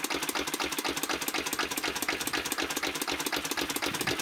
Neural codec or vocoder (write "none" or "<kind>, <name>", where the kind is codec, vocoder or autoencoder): none